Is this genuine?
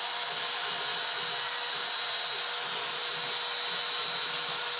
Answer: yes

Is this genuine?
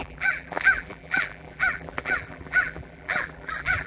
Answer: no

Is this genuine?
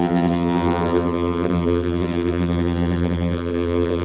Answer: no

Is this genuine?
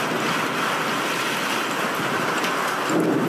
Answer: yes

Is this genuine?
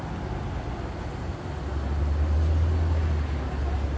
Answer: yes